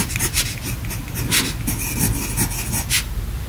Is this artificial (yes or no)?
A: no